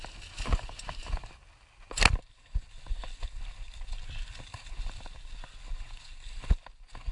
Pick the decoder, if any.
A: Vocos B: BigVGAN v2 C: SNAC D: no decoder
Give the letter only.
D